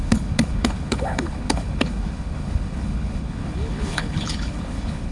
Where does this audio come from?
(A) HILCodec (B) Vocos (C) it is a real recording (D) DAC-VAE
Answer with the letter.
A